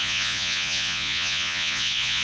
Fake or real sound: fake